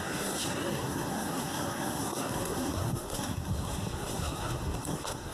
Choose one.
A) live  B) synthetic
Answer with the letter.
B